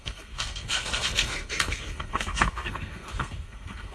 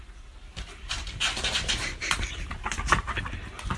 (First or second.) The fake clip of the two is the first